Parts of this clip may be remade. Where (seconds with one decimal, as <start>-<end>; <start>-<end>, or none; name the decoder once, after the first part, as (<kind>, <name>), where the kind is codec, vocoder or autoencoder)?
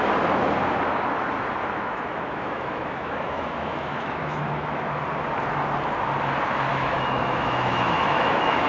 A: 1.6-5.0 (autoencoder, DAC-VAE); 6.7-8.7